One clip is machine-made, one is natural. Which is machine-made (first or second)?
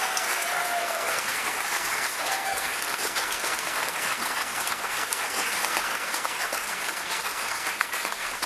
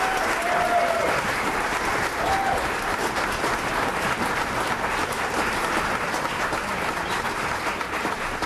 first